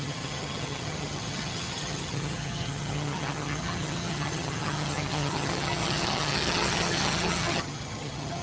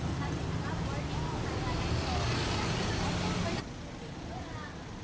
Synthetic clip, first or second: first